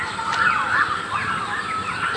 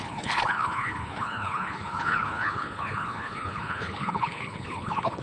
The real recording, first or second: first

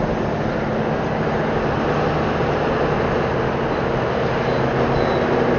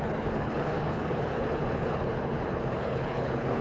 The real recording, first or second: first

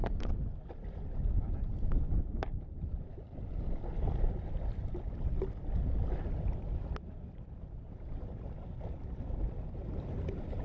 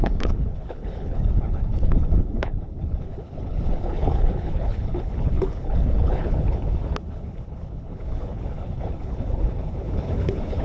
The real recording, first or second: first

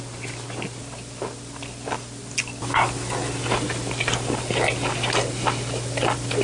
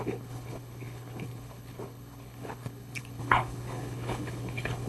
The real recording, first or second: first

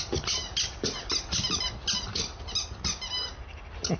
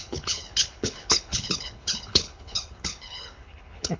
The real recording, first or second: first